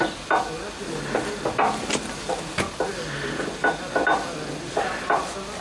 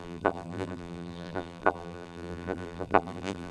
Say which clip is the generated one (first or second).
second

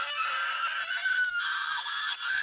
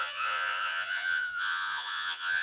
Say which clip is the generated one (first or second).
second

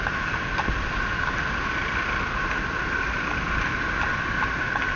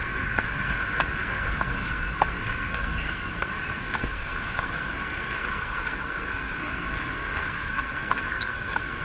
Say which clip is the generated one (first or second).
second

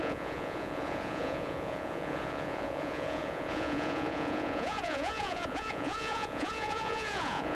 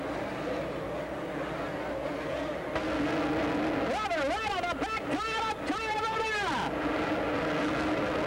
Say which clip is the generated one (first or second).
first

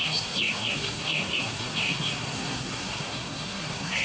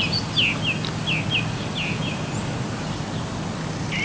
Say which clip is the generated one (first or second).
first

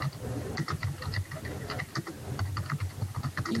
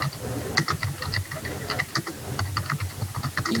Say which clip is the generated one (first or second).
first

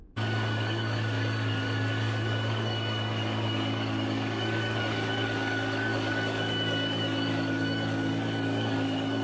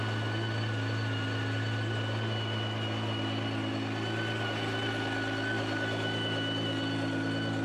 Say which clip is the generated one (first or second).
first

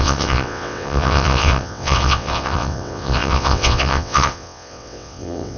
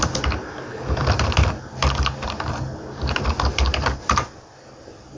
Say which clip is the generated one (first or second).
first